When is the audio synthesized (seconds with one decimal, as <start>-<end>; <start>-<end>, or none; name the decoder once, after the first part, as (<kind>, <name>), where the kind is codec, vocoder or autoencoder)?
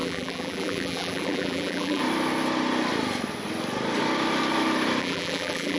0.0-2.0 (vocoder, BigVGAN v2); 5.0-5.8